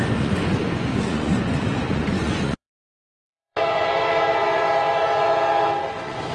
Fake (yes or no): yes